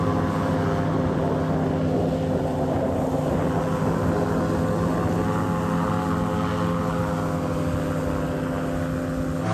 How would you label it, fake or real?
real